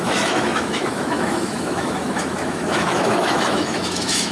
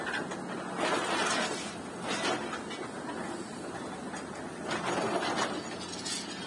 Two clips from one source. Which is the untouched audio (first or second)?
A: second